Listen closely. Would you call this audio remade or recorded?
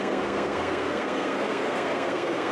remade